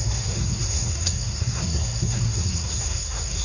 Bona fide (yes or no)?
no